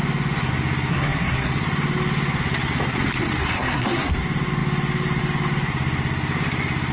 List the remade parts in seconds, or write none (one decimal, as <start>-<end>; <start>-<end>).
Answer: 0.9-1.5; 3.4-4.1